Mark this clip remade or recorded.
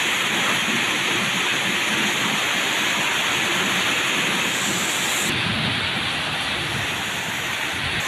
recorded